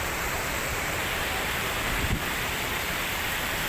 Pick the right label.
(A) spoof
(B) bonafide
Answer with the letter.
A